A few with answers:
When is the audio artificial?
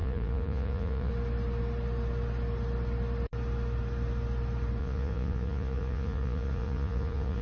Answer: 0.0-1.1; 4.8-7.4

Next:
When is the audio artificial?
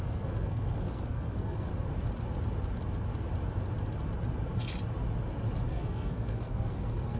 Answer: 0.0-1.7; 5.7-7.2